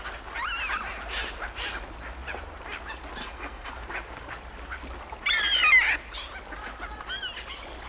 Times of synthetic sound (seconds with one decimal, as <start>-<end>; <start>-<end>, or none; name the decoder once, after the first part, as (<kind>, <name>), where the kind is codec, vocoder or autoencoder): 3.2-3.7 (codec, SNAC)